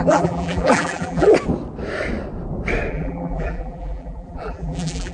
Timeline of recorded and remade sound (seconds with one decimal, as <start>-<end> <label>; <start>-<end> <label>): 0.0-1.3 remade; 1.3-2.9 recorded; 2.9-5.1 remade